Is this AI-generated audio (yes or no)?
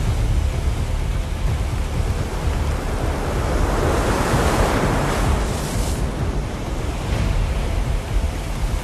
no